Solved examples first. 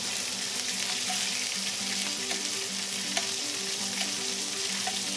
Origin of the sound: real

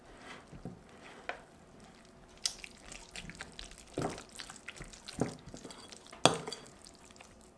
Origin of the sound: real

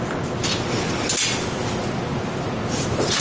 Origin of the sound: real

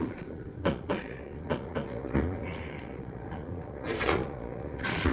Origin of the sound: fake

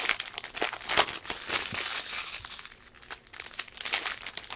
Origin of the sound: real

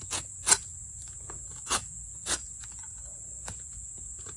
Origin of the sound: fake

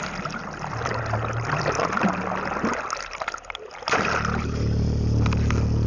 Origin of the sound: real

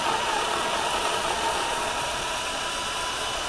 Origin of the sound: fake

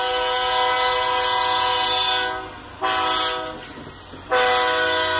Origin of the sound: real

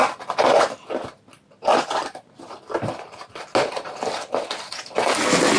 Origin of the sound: real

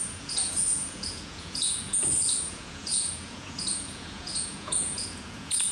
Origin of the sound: fake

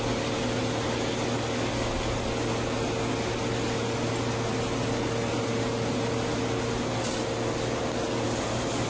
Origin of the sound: real